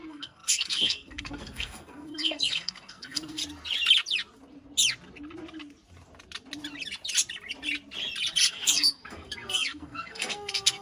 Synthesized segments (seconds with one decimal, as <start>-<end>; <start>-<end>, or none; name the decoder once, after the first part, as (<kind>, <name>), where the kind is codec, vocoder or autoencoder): 0.0-3.4 (codec, SNAC); 8.5-10.8